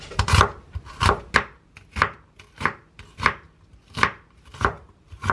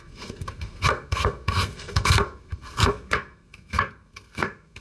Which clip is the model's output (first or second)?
second